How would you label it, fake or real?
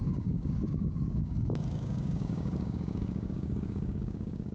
fake